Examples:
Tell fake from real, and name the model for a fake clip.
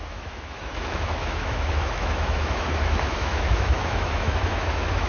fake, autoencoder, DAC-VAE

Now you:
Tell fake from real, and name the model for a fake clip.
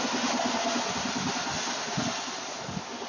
real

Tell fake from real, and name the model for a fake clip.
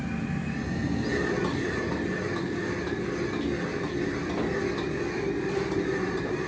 real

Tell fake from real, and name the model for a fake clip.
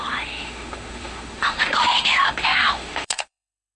fake, autoencoder, DAC-VAE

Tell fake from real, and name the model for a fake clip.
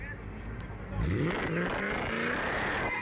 real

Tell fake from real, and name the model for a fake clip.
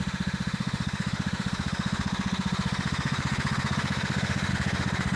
fake, autoencoder, DAC-VAE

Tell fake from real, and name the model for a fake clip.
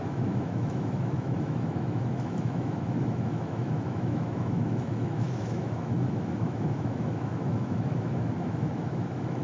fake, autoencoder, DAC-VAE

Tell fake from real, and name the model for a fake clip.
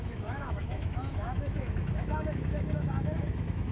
fake, autoencoder, DAC-VAE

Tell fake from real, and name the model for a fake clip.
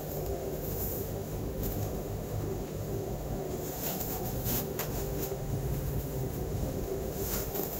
fake, autoencoder, DAC-VAE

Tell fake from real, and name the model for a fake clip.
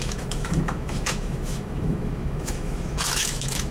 fake, autoencoder, DAC-VAE